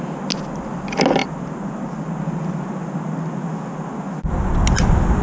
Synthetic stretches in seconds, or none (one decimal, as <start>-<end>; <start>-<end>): none